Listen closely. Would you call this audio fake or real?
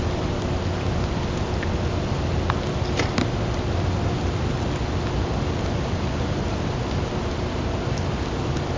real